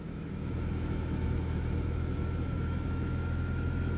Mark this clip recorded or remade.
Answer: remade